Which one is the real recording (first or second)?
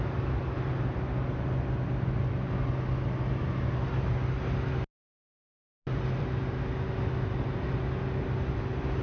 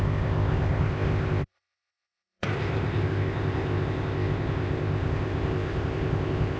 first